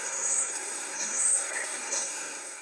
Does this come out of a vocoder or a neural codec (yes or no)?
yes